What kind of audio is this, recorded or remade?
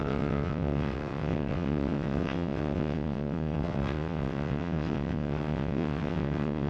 remade